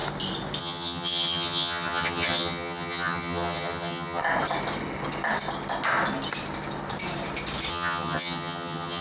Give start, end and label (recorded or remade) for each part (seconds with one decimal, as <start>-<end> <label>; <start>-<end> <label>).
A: 0.0-0.6 recorded; 0.6-4.2 remade; 4.2-7.7 recorded; 7.7-9.0 remade